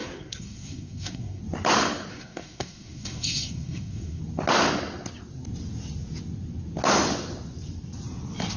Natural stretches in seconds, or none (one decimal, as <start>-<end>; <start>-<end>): 1.4-2.1; 4.2-8.6